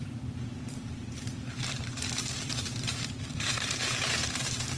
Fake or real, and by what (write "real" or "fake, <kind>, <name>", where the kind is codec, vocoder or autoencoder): fake, vocoder, BigVGAN v2